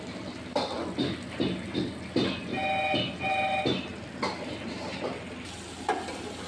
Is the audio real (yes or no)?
yes